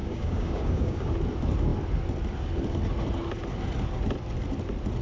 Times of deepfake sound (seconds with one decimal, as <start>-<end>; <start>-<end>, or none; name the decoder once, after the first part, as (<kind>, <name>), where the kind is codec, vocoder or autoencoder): 0.0-1.1 (codec, DAC)